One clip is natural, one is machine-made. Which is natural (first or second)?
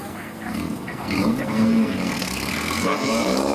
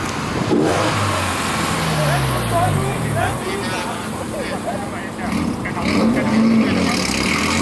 second